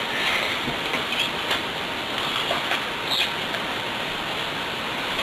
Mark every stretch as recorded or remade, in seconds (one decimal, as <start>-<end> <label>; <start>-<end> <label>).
0.0-5.2 recorded